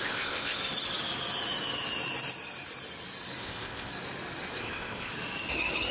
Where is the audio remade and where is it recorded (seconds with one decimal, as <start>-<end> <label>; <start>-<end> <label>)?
0.0-0.6 remade; 0.6-3.4 recorded; 3.4-3.9 remade; 3.9-4.6 recorded; 4.6-5.1 remade; 5.1-5.9 recorded